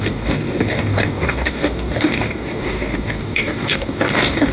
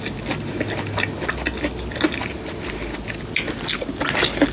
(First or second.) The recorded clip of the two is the second